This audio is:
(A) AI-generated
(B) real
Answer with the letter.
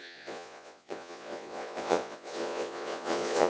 A